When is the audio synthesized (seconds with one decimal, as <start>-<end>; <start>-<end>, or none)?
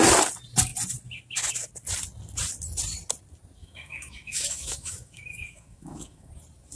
3.6-6.3